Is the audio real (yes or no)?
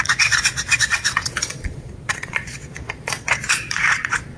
no